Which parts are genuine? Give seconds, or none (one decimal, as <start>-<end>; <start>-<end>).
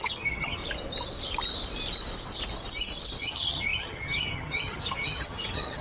0.6-3.2